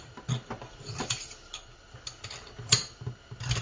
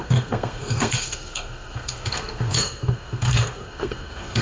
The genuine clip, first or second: first